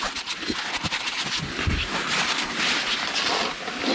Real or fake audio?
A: real